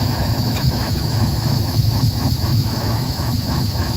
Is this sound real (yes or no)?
no